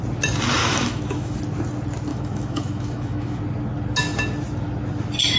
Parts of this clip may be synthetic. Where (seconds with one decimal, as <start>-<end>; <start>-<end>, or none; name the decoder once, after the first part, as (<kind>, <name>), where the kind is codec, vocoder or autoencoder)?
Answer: 0.6-1.4 (autoencoder, DAC-VAE); 2.1-3.4